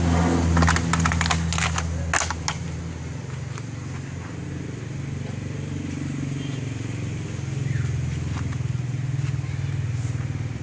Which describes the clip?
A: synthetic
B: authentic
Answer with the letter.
B